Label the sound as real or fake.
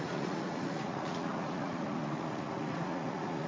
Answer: fake